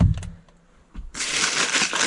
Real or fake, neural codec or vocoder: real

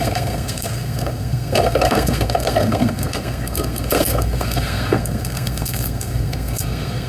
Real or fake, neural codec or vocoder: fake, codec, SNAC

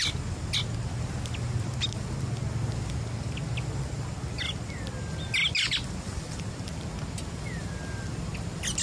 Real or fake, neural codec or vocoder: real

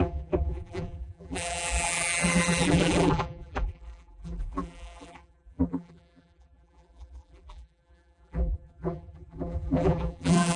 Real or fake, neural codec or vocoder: fake, vocoder, BigVGAN v2